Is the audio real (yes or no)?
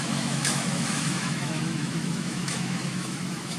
no